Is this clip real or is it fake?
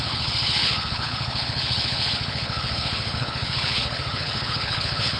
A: fake